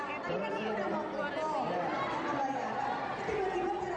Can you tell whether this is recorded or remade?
recorded